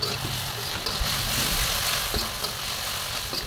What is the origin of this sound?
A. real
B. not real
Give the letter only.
A